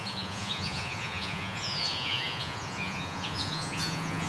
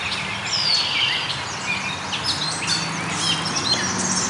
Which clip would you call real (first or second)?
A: second